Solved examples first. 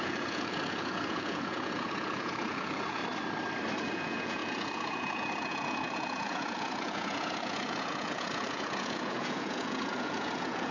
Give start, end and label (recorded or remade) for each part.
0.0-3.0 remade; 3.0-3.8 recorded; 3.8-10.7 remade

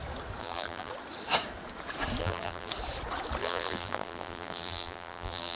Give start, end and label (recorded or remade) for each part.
0.0-0.4 recorded; 0.4-0.9 remade; 0.9-2.2 recorded; 2.2-2.7 remade; 2.7-3.4 recorded; 3.4-5.6 remade

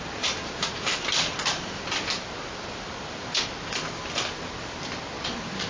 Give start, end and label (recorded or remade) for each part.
0.0-5.7 remade